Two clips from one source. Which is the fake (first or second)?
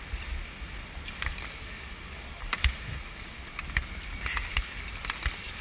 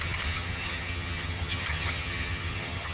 second